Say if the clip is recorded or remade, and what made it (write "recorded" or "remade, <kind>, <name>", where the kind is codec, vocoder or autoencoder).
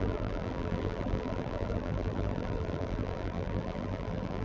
remade, vocoder, BigVGAN v2